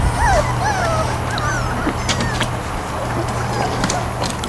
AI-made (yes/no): no